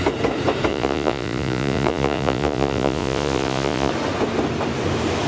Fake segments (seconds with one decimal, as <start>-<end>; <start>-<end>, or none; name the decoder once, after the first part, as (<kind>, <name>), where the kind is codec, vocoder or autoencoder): 0.7-3.9 (vocoder, Vocos)